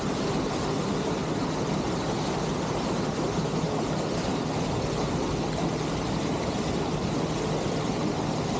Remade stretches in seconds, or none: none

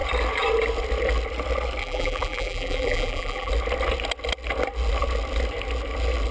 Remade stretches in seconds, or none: 1.8-3.5 (vocoder, BigVGAN v2)